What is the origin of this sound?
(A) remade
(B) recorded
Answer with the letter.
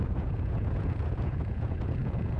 A